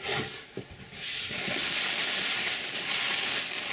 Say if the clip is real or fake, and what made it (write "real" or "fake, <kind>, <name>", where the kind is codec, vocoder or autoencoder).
real